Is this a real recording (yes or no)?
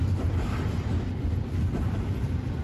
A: yes